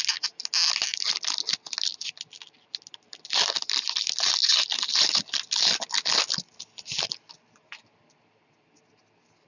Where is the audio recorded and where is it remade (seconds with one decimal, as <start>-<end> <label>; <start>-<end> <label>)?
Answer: 0.0-9.5 recorded